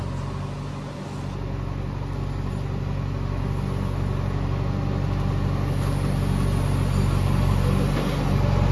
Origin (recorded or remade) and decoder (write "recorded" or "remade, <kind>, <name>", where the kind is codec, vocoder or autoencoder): recorded